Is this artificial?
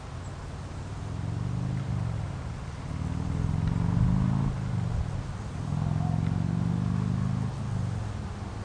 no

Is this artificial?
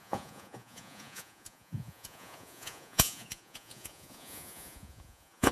yes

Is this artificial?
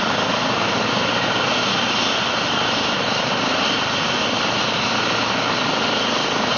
no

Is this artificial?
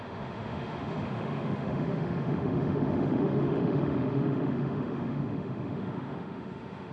yes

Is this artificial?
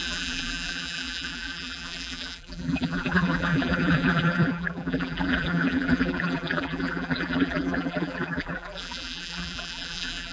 yes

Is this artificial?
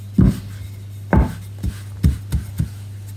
no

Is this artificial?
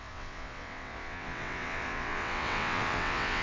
yes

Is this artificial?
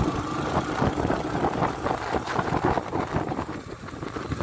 no